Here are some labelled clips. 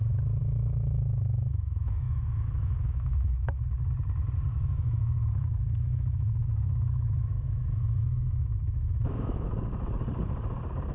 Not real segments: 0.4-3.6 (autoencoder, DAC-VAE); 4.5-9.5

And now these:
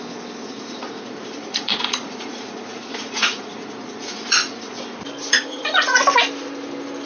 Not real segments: 0.4-4.7 (vocoder, Vocos); 5.2-6.0